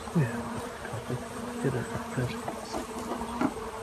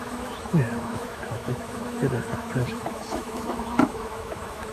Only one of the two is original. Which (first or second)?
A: first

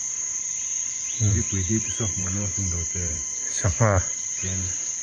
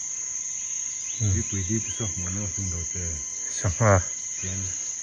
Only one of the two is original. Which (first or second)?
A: second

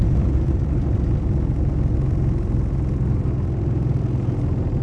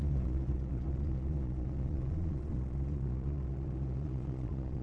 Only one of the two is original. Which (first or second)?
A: first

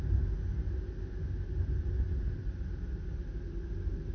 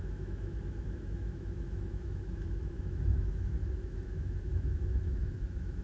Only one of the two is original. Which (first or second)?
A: first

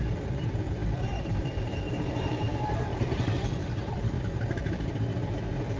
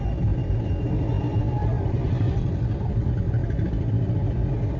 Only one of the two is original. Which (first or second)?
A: second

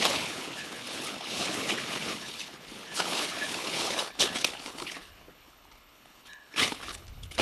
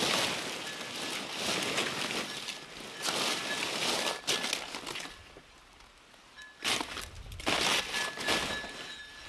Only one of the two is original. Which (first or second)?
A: second